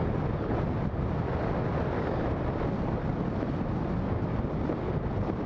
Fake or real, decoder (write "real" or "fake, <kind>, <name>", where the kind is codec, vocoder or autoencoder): real